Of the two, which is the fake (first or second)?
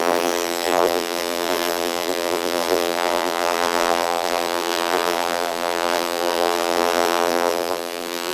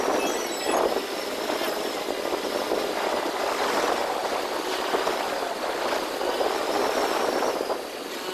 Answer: first